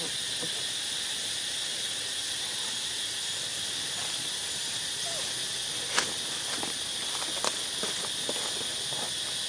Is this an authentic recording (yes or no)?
yes